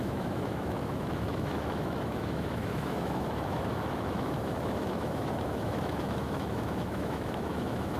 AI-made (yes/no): yes